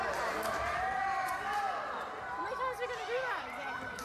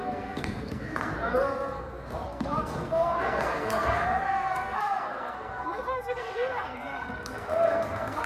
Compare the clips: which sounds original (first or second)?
first